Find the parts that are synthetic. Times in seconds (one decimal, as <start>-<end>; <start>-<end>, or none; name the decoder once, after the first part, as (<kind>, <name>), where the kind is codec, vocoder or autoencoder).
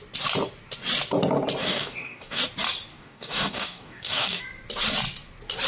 1.6-2.4 (codec, DAC); 2.9-4.4